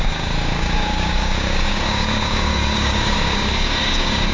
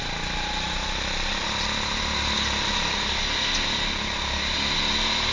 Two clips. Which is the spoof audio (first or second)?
first